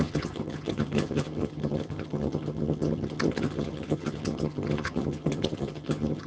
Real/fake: fake